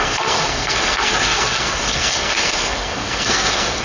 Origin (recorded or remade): remade